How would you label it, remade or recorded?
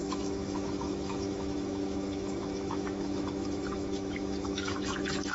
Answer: remade